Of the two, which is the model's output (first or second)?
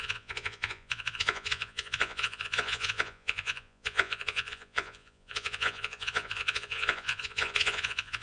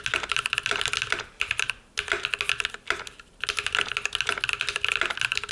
first